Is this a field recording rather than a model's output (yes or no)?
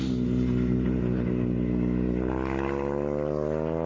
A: yes